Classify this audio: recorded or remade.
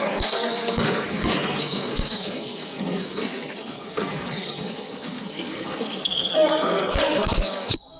remade